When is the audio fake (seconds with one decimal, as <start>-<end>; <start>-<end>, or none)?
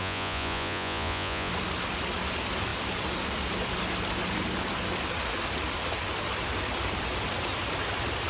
0.0-1.5